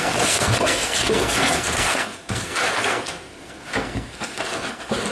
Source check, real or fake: fake